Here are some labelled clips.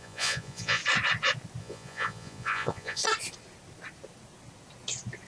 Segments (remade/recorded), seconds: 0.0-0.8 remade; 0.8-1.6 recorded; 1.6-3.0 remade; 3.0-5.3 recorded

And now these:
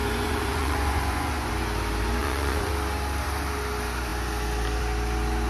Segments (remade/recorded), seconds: 0.0-1.5 remade; 1.5-2.2 recorded; 2.2-2.7 remade; 2.7-5.5 recorded

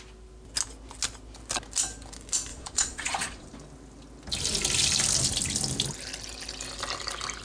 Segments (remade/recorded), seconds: 0.0-2.5 recorded; 2.5-3.5 remade; 3.5-7.4 recorded